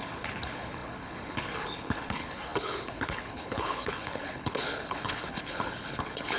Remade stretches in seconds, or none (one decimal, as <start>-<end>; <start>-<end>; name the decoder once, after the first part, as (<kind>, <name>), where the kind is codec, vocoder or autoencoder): 0.0-6.4 (codec, HILCodec)